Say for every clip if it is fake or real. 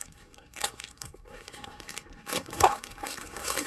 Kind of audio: fake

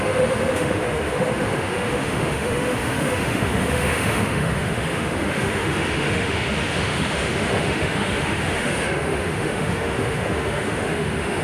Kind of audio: fake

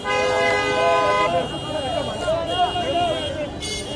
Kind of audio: real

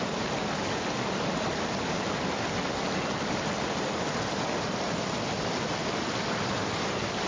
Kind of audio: real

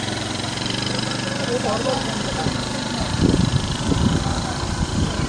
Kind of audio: fake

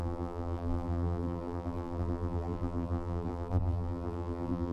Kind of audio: fake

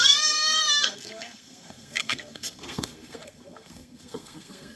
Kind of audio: fake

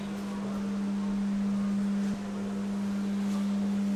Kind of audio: real